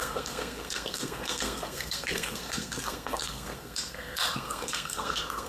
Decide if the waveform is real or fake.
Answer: fake